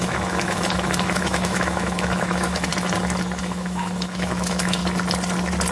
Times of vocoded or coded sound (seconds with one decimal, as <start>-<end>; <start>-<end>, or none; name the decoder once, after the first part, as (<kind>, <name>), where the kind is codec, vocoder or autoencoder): 0.0-2.7 (autoencoder, DAC-VAE); 3.4-4.8